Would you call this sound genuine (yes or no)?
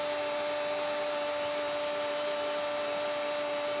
yes